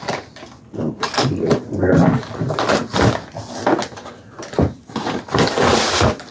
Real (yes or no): yes